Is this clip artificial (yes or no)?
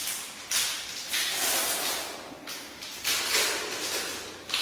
no